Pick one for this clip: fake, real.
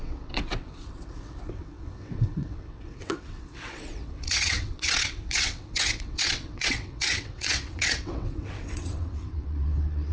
fake